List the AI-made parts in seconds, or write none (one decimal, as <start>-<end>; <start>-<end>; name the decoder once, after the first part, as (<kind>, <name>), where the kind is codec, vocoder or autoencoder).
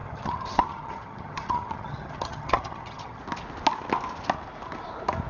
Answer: 0.0-3.2 (vocoder, HiFi-GAN)